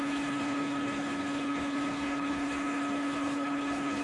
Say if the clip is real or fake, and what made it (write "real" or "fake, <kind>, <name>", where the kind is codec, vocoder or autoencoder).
fake, codec, HILCodec